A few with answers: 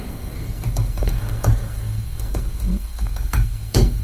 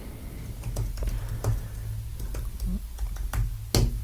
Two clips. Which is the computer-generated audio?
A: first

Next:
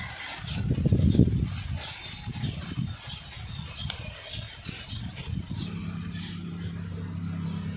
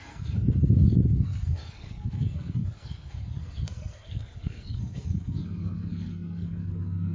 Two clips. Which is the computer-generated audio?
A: second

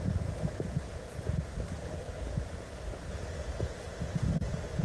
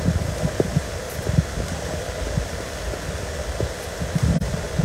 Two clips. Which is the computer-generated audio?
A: first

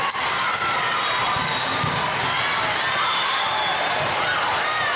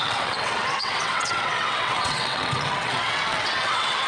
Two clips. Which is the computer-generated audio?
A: second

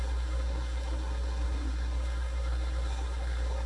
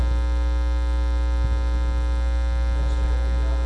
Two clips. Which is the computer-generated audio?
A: first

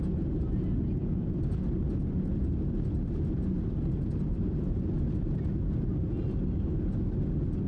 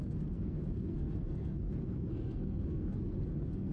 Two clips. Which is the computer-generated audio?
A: second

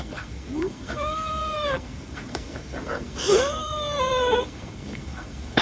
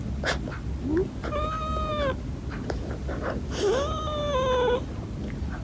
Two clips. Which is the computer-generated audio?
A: first